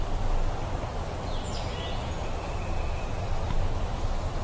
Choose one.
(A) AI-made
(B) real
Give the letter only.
B